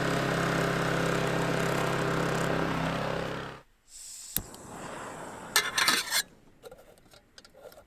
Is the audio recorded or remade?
recorded